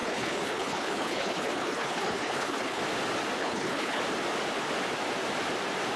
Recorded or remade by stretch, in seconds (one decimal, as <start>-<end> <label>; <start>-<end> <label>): 0.0-2.8 remade; 2.8-3.4 recorded; 3.4-4.0 remade; 4.0-6.0 recorded